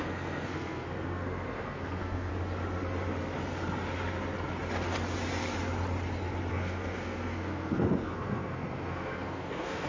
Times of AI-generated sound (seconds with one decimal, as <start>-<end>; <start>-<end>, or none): 0.0-2.3; 6.5-9.9